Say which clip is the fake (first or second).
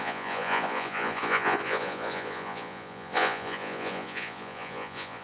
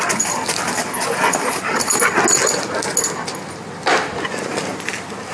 first